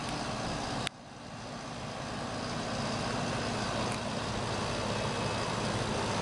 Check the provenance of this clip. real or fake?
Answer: real